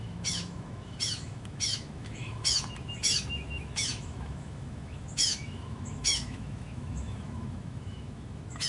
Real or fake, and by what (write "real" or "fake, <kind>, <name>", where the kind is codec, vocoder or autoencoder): fake, autoencoder, DAC-VAE